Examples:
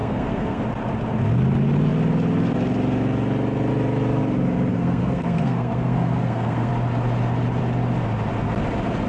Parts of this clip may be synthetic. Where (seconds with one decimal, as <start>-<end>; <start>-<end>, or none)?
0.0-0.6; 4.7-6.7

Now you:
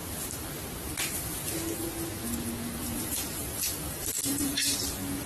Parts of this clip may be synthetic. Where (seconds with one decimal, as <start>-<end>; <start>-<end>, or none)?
2.8-4.8

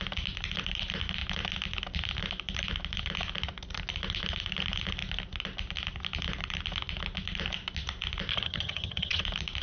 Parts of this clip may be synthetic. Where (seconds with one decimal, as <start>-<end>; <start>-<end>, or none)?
8.3-9.2

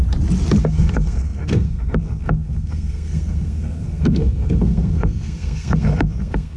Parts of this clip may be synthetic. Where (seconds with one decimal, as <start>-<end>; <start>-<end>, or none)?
0.6-6.6

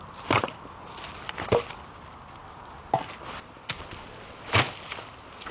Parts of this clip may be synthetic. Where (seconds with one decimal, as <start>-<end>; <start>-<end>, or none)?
none